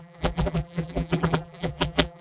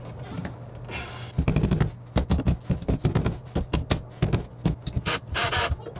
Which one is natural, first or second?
second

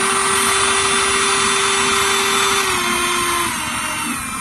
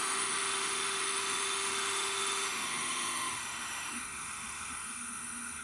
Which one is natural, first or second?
first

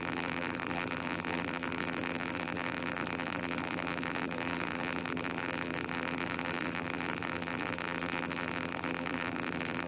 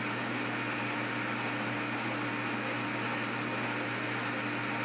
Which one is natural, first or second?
second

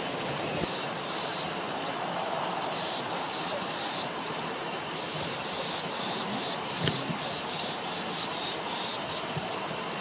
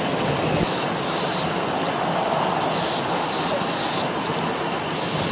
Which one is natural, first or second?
second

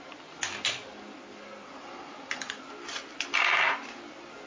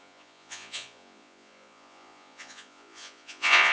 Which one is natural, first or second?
first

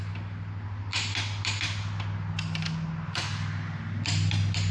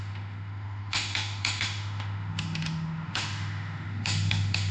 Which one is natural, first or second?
first